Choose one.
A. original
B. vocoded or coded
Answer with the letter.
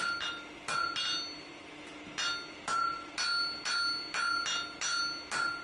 A